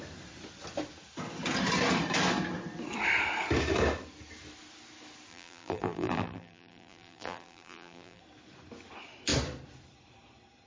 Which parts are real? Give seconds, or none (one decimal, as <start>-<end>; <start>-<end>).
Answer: 0.0-5.3; 8.2-10.7